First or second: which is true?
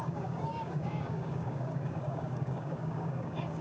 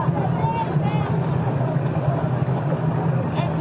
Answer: second